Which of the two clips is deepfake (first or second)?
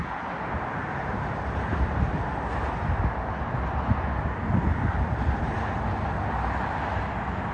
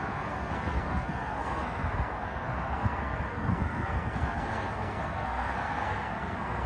second